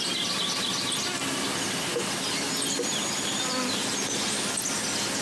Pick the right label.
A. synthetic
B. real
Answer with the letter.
B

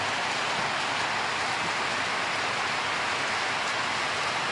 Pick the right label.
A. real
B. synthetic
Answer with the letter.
A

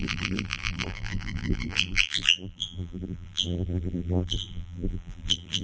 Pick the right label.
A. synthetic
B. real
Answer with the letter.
A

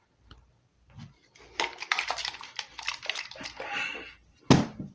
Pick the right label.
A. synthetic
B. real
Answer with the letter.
A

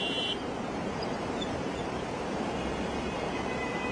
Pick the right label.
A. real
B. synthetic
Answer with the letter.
B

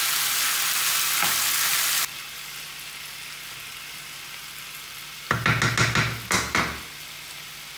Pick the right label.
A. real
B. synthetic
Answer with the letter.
A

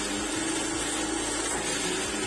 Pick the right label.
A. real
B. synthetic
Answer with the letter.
A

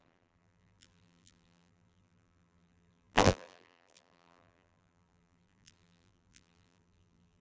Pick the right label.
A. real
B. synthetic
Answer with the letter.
B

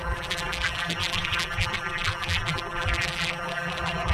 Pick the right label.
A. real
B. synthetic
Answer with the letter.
B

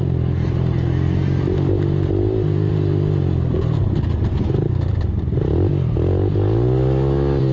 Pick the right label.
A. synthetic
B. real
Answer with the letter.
B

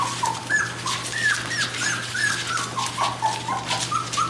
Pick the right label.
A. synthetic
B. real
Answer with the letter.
B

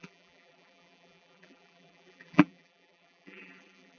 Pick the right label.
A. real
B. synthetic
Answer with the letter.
B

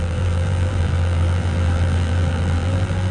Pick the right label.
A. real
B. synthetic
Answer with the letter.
B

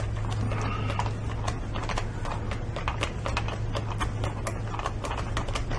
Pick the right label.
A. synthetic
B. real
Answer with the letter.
B